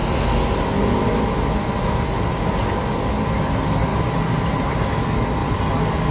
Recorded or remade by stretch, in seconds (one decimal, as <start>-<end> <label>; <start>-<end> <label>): 0.0-6.1 recorded